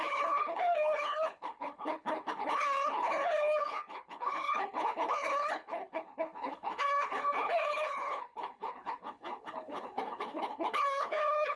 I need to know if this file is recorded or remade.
remade